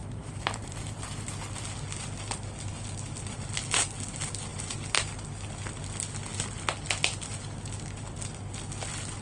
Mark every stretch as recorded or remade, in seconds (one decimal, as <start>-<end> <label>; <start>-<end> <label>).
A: 0.0-1.3 remade; 1.3-9.2 recorded